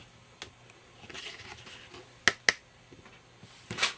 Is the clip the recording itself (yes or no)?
yes